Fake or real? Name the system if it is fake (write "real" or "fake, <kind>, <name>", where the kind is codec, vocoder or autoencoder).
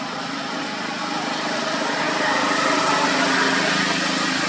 real